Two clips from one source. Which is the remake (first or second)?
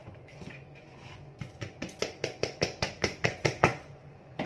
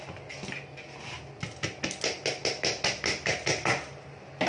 first